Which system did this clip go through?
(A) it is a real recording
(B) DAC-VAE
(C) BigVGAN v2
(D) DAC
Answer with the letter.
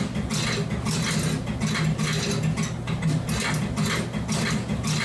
A